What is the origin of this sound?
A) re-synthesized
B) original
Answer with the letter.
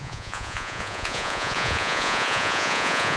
A